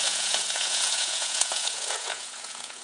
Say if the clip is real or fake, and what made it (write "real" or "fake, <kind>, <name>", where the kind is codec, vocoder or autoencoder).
fake, vocoder, Vocos